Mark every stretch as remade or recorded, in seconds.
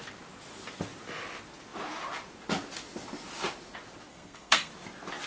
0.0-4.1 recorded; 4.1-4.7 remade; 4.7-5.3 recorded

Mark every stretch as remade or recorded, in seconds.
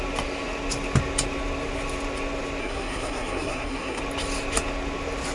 0.0-2.6 recorded; 2.6-4.0 remade; 4.0-5.3 recorded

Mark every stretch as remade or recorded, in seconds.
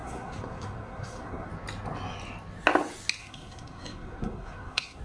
0.0-1.5 remade; 1.5-3.2 recorded; 3.2-5.0 remade